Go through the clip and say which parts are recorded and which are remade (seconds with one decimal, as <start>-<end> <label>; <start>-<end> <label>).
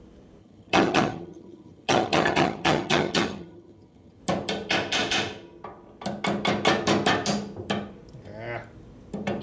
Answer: 0.0-0.4 recorded; 0.4-4.2 remade; 4.2-9.4 recorded